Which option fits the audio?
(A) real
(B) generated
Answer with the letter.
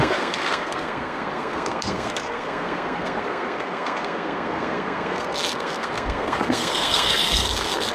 B